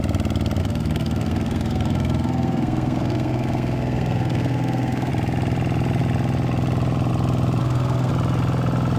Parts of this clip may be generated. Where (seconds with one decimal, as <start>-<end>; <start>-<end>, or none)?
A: 0.6-5.1; 7.6-8.1